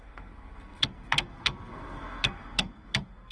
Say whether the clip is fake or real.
fake